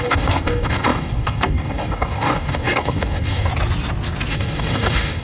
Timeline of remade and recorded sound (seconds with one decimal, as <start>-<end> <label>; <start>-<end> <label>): 0.0-3.5 remade; 3.5-4.3 recorded; 4.3-5.2 remade